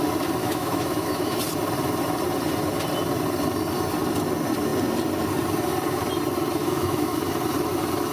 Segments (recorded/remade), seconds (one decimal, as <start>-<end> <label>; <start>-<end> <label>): 0.0-0.4 recorded; 0.4-1.4 remade; 1.4-6.6 recorded; 6.6-7.2 remade; 7.2-8.1 recorded